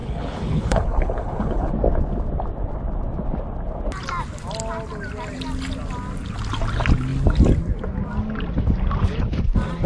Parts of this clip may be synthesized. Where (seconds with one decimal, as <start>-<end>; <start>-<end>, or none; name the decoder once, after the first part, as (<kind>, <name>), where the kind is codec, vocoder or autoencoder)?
0.0-1.7 (codec, HILCodec)